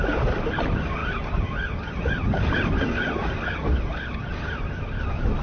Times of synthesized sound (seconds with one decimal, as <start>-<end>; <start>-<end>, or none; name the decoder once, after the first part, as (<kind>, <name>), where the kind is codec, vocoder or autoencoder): none